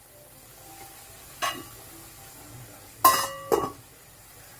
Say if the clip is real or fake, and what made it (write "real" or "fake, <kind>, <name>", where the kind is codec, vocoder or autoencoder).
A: real